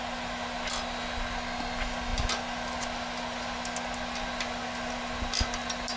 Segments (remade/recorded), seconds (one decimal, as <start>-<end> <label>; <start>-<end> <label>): 0.0-6.0 recorded